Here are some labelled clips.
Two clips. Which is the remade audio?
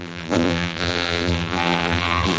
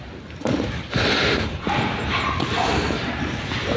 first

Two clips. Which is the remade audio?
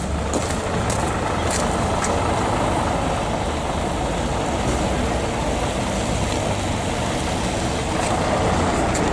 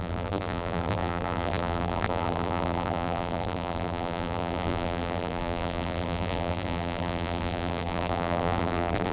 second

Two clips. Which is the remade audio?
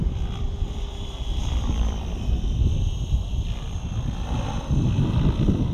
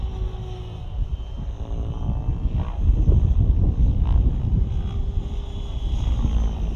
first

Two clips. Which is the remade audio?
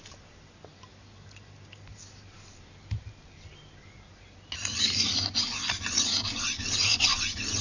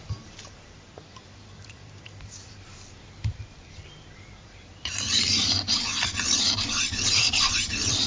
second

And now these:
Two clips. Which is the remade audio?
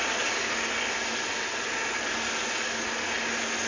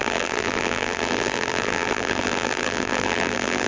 second